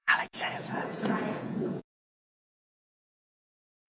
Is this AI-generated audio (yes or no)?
yes